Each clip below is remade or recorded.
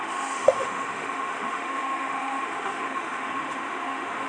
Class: remade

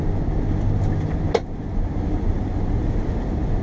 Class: recorded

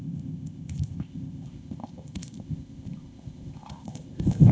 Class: remade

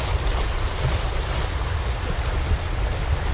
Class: recorded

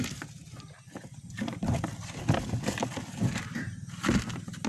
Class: recorded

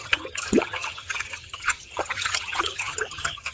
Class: remade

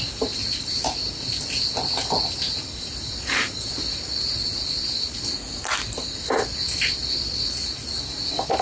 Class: recorded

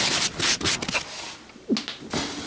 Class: recorded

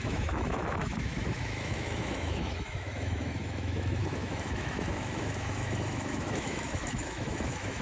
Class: remade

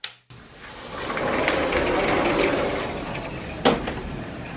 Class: recorded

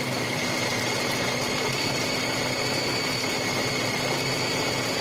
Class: recorded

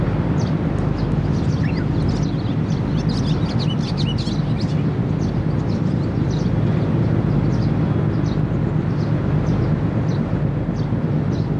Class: recorded